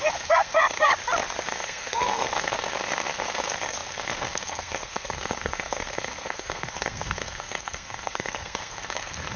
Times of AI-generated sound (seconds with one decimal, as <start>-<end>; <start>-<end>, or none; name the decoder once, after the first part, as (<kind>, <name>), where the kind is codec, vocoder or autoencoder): 0.0-0.9 (codec, SNAC); 1.5-9.4